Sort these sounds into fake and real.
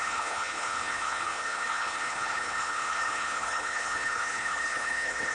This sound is fake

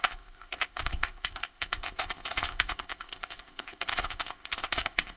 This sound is fake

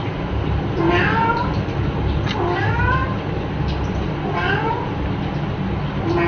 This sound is real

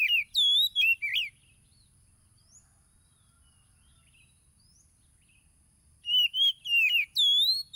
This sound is real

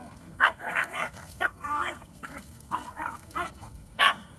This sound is fake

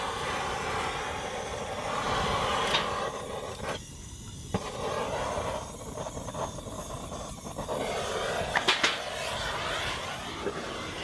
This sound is real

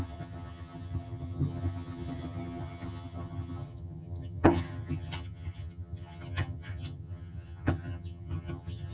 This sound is fake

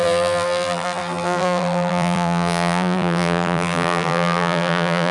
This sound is fake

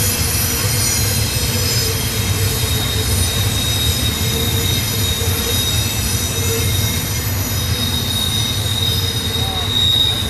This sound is real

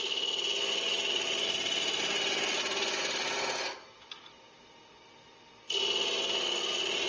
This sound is real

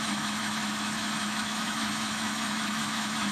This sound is fake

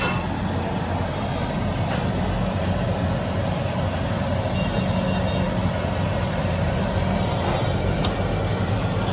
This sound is real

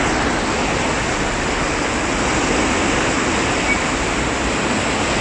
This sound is real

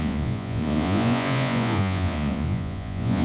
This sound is fake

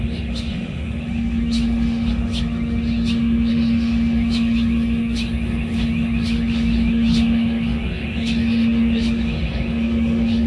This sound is fake